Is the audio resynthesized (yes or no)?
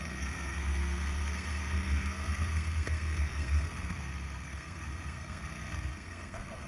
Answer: yes